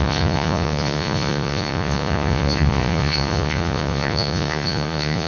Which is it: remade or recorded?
remade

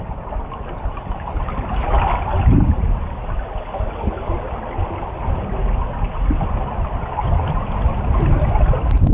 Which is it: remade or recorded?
recorded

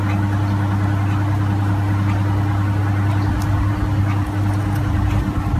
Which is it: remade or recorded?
recorded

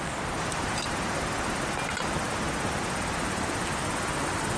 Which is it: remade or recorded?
recorded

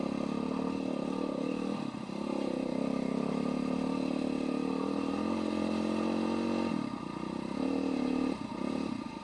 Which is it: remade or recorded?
recorded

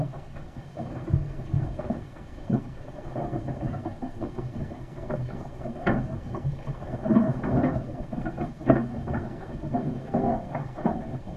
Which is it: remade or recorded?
remade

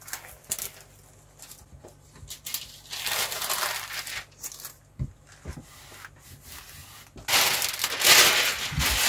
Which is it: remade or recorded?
recorded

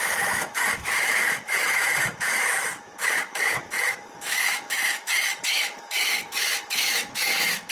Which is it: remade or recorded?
remade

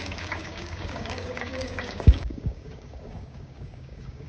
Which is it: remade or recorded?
remade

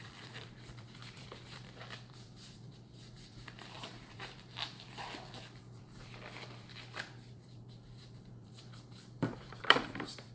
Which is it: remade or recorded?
remade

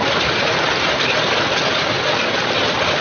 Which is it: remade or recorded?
recorded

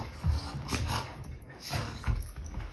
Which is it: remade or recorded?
remade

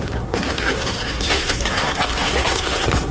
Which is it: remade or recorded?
remade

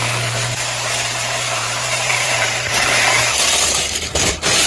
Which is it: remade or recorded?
remade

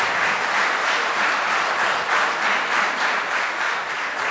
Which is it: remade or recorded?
recorded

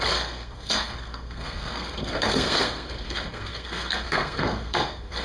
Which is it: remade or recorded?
remade